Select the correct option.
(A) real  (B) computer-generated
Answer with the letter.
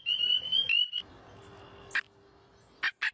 A